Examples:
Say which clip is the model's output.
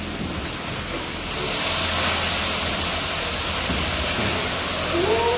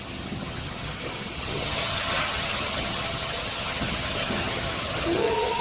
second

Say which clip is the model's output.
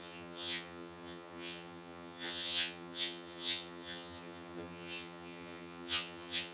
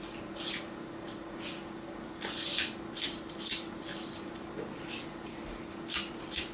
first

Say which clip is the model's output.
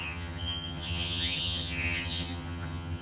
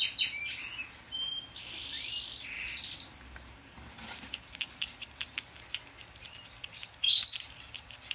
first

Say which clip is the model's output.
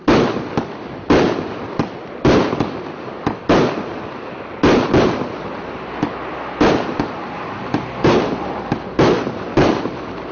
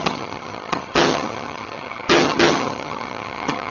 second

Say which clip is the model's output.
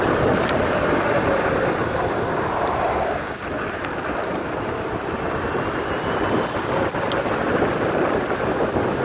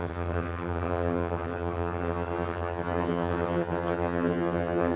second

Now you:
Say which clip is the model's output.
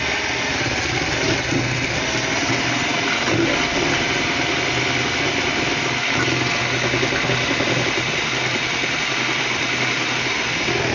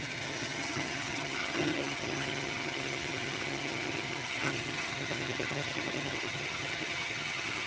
second